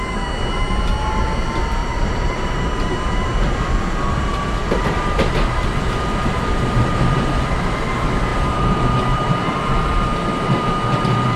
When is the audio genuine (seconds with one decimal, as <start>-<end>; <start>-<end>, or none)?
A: 0.0-1.8; 4.8-8.3; 9.6-11.4